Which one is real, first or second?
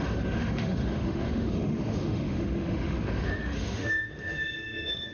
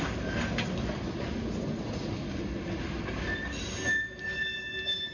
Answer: second